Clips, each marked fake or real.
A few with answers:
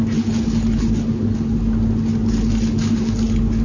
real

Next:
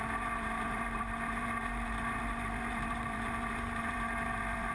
fake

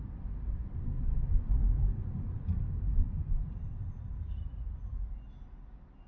fake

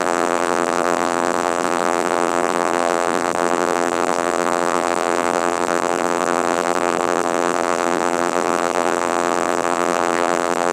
fake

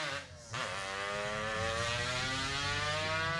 real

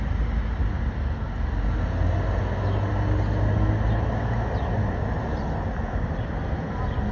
real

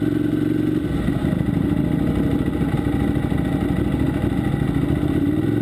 real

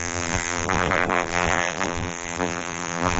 fake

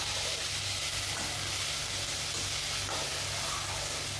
real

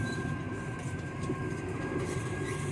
fake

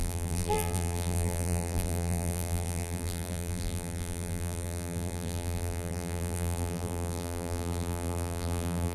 fake